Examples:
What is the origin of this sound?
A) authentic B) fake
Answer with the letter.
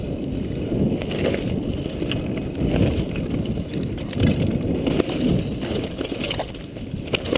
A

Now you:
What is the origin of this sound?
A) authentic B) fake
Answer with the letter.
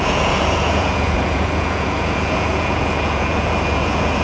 B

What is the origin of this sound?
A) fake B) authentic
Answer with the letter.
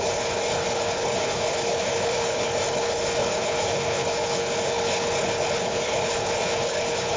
A